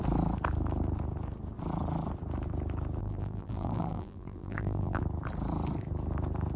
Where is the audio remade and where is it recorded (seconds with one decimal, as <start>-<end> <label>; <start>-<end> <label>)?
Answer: 0.0-3.0 recorded; 3.0-5.0 remade; 5.0-6.6 recorded